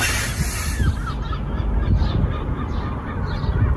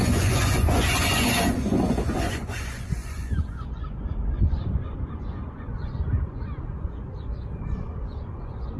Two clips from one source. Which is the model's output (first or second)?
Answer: second